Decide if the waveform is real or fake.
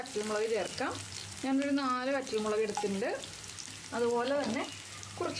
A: real